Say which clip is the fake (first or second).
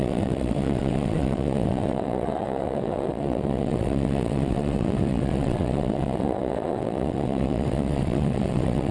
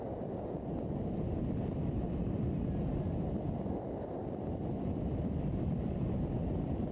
first